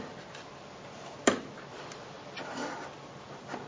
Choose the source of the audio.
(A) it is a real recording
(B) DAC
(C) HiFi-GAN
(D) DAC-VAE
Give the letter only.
A